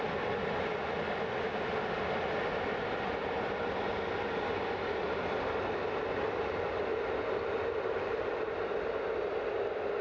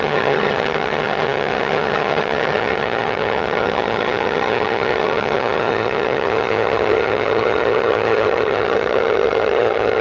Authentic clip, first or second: first